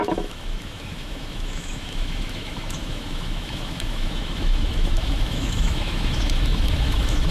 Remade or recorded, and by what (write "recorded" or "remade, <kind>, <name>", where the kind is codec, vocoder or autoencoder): remade, autoencoder, DAC-VAE